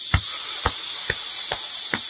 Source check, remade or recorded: recorded